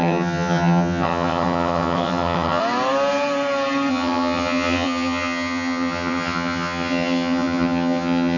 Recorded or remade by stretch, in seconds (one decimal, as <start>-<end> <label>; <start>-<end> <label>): 0.0-2.6 remade; 2.6-3.9 recorded; 3.9-8.4 remade